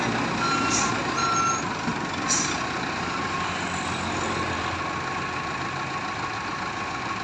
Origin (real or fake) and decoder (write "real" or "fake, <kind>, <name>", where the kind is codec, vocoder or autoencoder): real